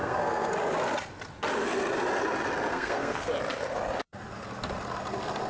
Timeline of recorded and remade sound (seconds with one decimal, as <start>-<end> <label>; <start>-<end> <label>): 0.0-0.5 remade; 0.5-2.7 recorded; 2.7-3.3 remade; 3.3-5.5 recorded